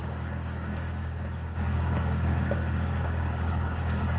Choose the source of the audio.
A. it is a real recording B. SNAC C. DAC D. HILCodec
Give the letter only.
C